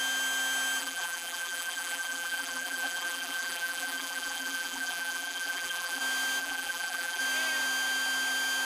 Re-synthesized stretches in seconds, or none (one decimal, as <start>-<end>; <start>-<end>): 0.8-6.0; 6.4-7.2

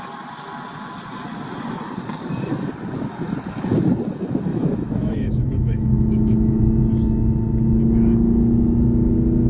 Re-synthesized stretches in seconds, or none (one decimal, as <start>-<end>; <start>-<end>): 4.5-6.6

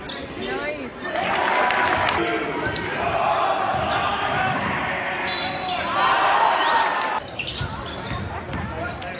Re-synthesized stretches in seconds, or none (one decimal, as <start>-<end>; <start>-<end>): none

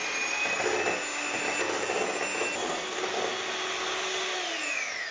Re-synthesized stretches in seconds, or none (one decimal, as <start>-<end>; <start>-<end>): none